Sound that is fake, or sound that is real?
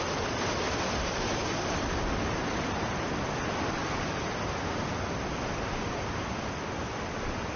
real